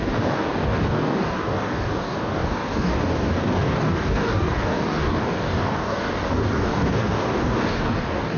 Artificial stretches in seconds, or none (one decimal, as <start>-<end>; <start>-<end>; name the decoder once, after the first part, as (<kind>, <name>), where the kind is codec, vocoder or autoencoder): 0.0-8.4 (codec, DAC)